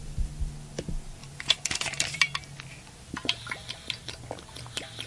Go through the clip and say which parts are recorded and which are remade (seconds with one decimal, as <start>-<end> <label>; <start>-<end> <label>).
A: 0.0-5.1 recorded